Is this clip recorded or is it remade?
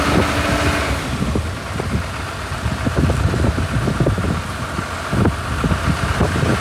recorded